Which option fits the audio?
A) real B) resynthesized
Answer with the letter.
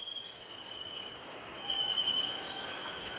B